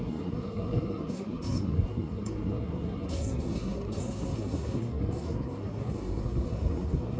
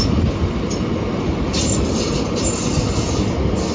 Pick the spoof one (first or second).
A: first